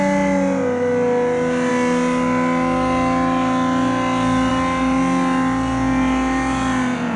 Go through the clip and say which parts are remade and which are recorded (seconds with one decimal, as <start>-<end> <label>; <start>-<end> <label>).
0.0-7.2 recorded